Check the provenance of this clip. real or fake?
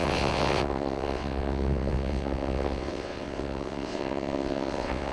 fake